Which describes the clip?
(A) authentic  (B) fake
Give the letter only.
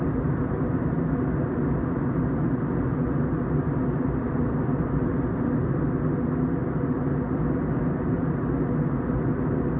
A